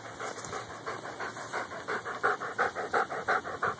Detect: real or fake real